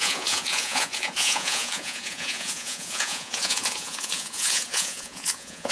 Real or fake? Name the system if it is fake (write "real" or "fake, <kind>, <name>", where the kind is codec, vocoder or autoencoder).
fake, vocoder, Vocos